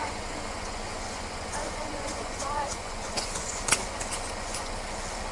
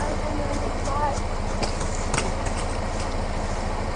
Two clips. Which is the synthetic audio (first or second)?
first